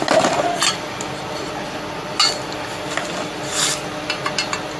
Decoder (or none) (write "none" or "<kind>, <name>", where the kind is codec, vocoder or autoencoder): none